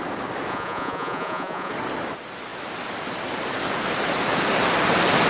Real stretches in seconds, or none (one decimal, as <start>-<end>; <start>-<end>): 0.0-0.5; 1.7-5.3